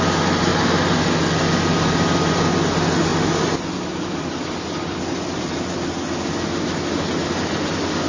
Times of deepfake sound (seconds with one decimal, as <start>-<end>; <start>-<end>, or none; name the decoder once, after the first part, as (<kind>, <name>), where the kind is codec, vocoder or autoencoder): none